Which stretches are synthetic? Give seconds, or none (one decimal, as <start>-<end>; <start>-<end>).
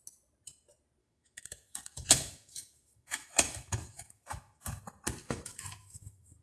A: 1.0-4.8; 5.2-6.4